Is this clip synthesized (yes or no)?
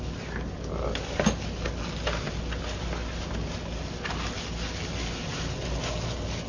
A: no